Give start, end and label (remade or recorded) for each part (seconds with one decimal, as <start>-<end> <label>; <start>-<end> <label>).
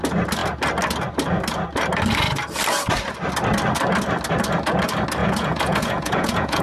0.0-5.2 recorded; 5.2-6.6 remade